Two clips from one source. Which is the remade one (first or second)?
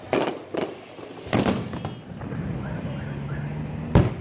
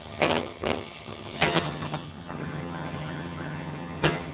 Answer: second